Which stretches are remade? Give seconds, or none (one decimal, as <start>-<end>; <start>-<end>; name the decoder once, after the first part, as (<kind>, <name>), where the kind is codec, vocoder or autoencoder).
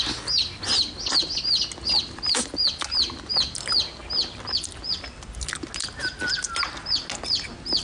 none